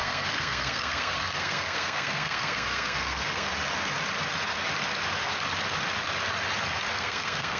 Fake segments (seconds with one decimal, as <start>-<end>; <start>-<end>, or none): 0.0-3.5; 6.9-7.6